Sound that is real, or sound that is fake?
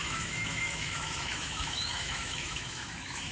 fake